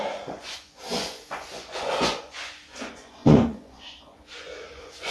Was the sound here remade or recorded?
remade